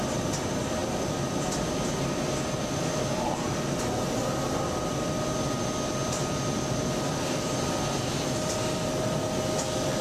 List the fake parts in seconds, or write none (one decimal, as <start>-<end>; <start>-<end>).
6.0-8.9